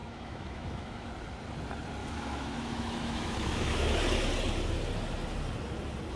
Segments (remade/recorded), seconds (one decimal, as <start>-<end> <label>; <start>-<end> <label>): 0.0-1.1 remade; 1.1-2.0 recorded; 2.0-4.0 remade; 4.0-6.2 recorded